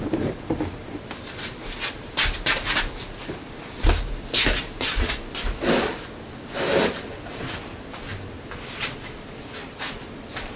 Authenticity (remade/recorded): recorded